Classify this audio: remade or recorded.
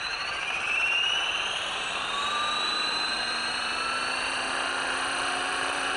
remade